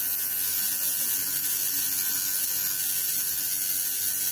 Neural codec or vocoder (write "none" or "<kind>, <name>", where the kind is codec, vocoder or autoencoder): none